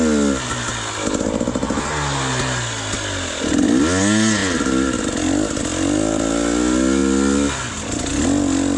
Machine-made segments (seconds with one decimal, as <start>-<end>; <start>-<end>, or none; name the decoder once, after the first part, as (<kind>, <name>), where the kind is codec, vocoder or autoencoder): none